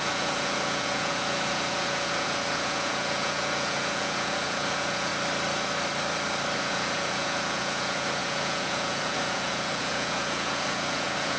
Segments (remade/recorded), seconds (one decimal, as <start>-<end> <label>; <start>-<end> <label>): 0.0-5.1 remade; 5.1-6.6 recorded; 6.6-11.4 remade